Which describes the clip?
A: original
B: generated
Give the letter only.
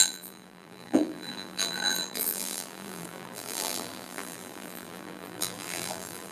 B